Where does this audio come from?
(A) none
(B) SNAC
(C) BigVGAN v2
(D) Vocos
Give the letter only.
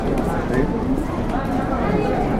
C